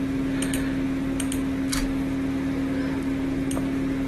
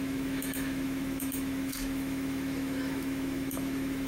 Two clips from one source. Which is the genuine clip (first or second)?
first